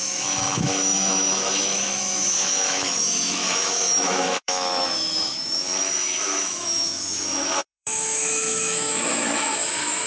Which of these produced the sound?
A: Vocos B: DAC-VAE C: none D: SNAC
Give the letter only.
B